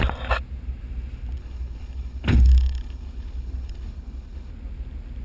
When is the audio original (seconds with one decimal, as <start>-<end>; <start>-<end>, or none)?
0.0-1.4; 4.5-5.2